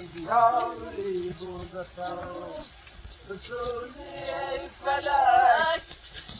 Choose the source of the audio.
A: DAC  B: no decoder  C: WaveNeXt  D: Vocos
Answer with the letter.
D